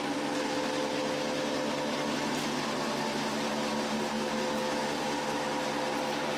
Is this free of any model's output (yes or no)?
yes